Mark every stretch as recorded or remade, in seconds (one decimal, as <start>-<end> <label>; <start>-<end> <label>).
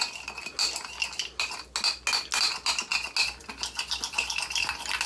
0.0-5.1 recorded